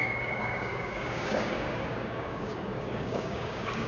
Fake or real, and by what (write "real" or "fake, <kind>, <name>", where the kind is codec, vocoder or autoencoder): fake, codec, DAC